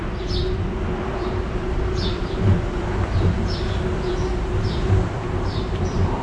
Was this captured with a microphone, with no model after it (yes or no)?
no